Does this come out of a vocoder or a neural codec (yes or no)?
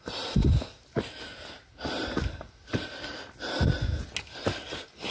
no